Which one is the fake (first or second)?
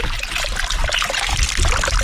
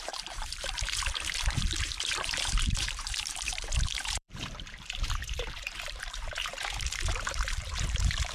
second